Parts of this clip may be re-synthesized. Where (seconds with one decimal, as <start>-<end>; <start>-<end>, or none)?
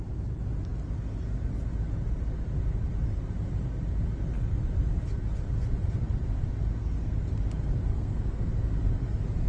6.8-7.3; 7.9-8.5